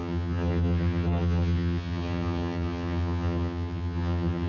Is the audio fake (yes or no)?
yes